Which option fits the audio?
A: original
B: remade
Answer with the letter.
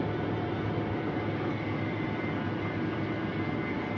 A